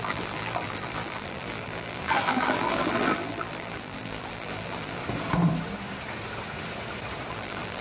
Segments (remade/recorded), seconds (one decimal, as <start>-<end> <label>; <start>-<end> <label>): 0.0-5.0 remade; 5.0-7.3 recorded; 7.3-7.8 remade